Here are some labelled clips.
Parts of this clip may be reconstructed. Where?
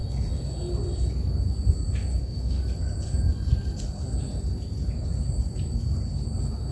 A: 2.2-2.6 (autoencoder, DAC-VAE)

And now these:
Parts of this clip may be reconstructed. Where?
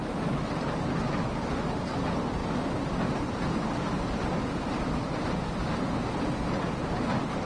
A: none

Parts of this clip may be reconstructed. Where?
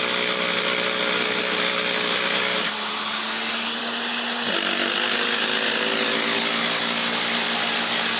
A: none